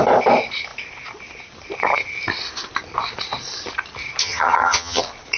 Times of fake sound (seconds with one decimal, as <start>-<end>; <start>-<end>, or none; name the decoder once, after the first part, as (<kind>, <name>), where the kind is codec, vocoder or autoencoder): 4.2-5.0 (vocoder, HiFi-GAN)